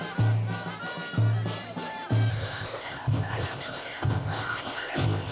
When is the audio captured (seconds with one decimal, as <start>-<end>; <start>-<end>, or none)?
0.0-2.3